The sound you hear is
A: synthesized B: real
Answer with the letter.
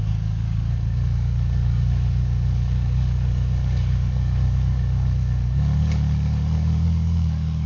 A